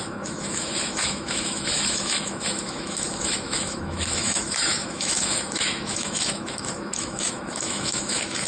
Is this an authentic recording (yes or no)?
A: no